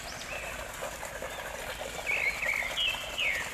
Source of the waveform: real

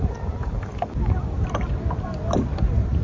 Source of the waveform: real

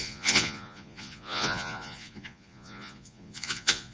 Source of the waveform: fake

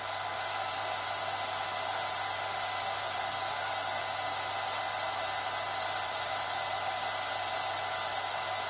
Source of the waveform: real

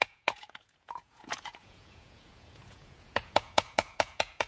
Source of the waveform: fake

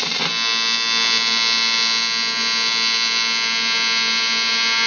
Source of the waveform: real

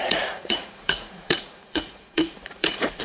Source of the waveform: fake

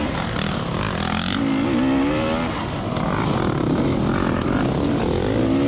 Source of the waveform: real